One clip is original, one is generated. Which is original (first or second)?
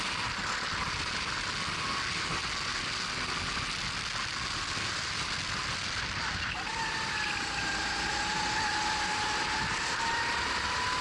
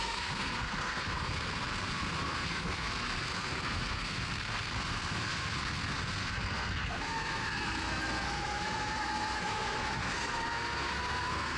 first